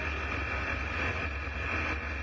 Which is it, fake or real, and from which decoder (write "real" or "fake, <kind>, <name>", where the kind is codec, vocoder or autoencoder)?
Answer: real